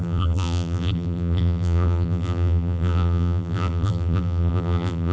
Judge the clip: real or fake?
fake